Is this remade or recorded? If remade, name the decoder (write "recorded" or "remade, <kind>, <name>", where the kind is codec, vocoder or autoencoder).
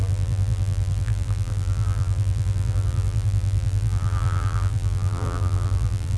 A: remade, vocoder, BigVGAN v2